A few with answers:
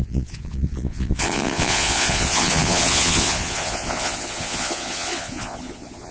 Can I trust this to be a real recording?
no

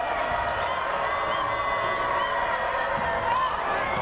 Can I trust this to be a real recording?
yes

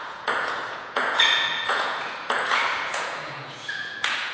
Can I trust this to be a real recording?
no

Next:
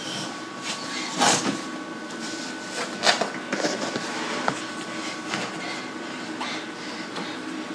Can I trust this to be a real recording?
yes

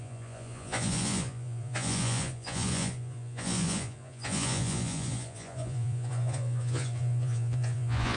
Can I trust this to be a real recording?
no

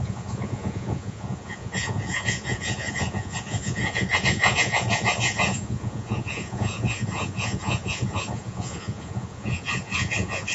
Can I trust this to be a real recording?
no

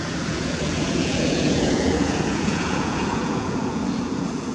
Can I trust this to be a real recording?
no